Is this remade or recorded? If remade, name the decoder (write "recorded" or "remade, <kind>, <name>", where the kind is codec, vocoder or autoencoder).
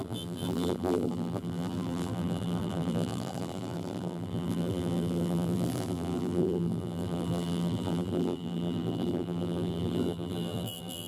remade, vocoder, BigVGAN v2